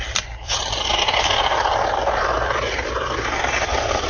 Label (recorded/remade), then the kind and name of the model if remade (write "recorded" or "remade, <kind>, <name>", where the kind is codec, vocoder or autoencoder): recorded